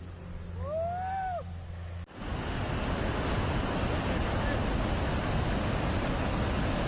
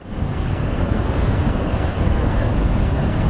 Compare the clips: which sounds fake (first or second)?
second